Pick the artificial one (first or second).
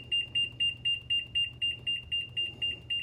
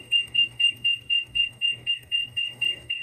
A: second